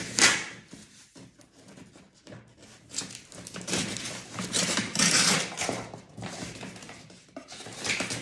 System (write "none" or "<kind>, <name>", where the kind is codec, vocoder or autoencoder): vocoder, BigVGAN v2